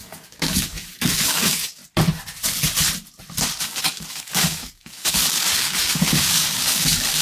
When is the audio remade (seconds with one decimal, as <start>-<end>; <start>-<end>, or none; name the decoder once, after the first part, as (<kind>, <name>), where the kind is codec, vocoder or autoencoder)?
0.0-1.8 (codec, DAC); 3.6-7.2